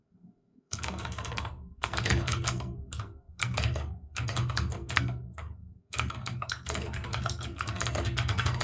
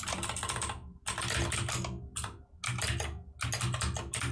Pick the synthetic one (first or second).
first